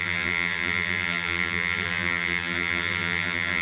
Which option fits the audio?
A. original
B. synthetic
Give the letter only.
B